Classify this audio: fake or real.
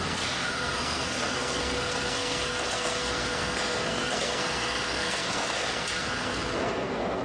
fake